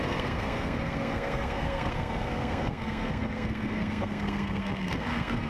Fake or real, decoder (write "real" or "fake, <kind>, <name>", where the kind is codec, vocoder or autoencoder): fake, codec, SNAC